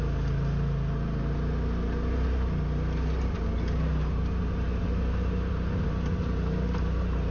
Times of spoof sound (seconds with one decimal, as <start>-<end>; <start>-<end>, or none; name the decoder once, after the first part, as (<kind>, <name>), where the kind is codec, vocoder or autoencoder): none